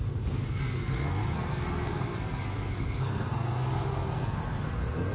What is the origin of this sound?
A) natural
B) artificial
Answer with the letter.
B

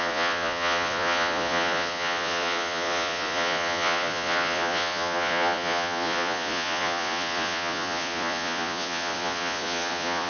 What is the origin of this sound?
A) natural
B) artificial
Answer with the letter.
B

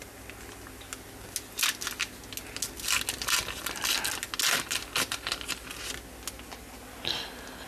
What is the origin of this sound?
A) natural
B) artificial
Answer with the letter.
A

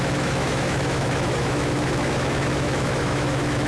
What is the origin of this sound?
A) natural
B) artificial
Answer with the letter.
B